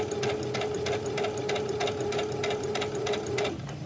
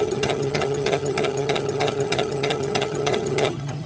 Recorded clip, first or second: first